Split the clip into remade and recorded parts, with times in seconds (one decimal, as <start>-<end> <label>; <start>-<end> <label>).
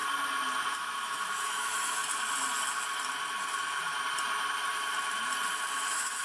0.0-0.7 recorded; 0.7-2.0 remade; 2.0-5.7 recorded; 5.7-6.2 remade